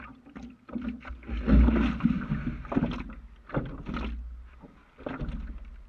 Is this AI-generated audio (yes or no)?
no